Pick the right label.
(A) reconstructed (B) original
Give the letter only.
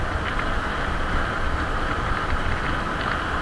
B